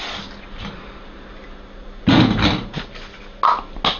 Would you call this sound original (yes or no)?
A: yes